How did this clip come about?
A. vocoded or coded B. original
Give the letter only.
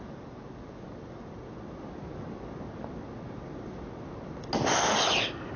B